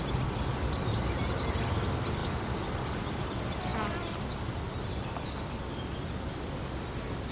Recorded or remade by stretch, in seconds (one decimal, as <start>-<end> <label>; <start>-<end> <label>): 0.0-2.2 recorded; 2.2-3.0 remade; 3.0-7.3 recorded